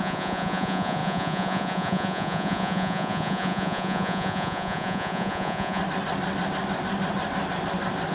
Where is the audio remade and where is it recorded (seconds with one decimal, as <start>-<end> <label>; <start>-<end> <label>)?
0.0-5.8 remade; 5.8-8.1 recorded